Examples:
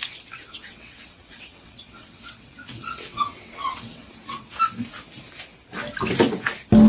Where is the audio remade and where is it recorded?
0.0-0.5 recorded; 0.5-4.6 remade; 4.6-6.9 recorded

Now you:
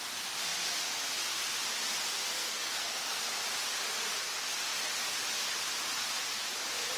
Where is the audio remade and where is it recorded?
0.0-2.3 recorded; 2.3-3.2 remade; 3.2-7.0 recorded